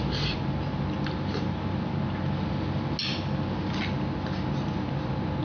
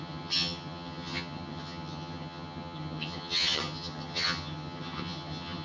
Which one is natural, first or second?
first